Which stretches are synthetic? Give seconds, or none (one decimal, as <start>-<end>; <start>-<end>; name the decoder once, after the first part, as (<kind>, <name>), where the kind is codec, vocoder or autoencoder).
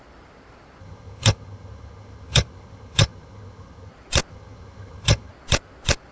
0.8-3.9 (vocoder, HiFi-GAN); 4.3-5.3